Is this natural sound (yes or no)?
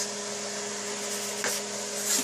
yes